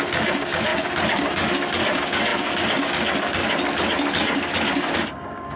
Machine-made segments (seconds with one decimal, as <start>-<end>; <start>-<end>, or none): 0.0-3.4; 4.1-5.6